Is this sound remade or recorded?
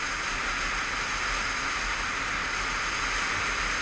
recorded